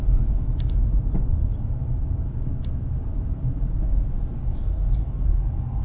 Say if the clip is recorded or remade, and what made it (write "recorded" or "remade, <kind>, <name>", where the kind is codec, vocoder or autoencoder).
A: recorded